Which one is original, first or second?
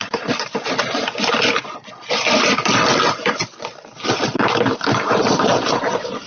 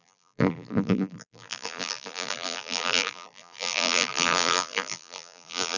first